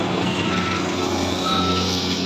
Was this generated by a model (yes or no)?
yes